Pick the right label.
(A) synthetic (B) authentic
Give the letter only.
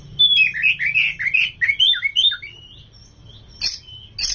B